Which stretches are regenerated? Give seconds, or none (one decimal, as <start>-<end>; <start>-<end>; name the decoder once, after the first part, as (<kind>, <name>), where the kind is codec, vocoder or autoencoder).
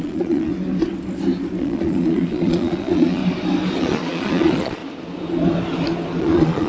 0.0-0.5 (vocoder, Vocos); 1.6-3.2; 3.8-4.8; 6.2-6.7